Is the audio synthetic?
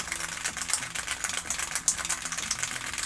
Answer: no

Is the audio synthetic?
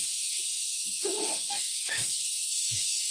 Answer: yes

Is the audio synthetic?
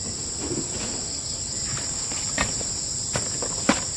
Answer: no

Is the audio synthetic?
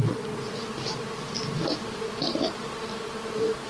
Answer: no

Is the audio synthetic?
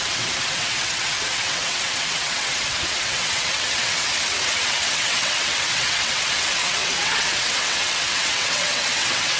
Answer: yes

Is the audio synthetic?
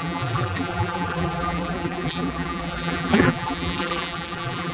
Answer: yes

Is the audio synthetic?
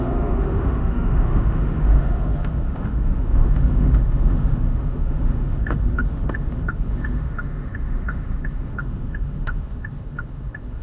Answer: yes